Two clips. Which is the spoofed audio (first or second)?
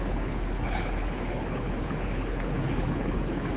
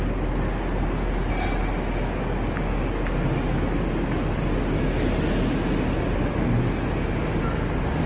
first